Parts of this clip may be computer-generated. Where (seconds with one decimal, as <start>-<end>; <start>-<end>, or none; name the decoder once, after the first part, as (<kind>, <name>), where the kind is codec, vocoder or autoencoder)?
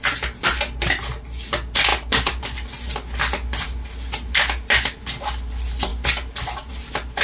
none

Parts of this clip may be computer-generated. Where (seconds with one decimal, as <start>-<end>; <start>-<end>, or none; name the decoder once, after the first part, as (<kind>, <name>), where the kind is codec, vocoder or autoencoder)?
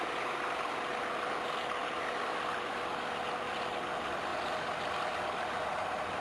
1.8-3.1 (vocoder, BigVGAN v2); 4.3-4.8